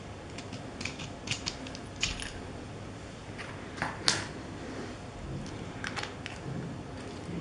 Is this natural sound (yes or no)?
yes